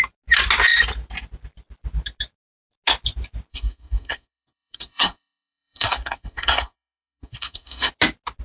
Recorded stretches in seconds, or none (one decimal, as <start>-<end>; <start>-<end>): 0.0-3.5; 7.9-8.4